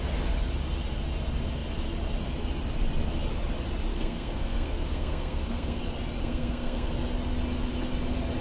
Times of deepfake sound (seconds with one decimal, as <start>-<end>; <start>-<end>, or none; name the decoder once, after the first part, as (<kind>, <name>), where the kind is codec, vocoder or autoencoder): 3.9-5.8 (codec, SNAC); 6.2-6.9